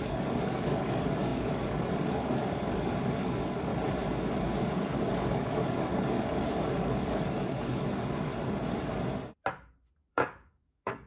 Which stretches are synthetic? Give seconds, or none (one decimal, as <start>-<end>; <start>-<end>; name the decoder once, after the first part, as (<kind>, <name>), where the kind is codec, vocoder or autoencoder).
0.0-3.7 (codec, DAC); 4.6-8.3; 10.1-11.1